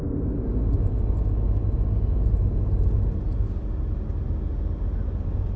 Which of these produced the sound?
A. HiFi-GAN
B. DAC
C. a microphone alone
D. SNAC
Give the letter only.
C